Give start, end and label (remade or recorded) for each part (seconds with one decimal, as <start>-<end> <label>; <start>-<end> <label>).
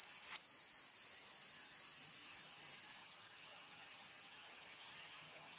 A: 0.0-3.0 recorded; 3.0-5.6 remade